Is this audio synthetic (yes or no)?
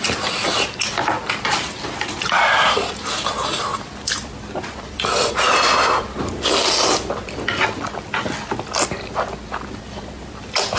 no